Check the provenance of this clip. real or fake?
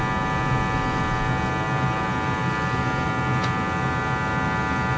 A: real